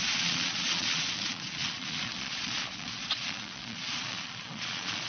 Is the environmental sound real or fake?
fake